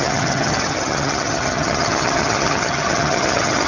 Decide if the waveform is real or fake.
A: fake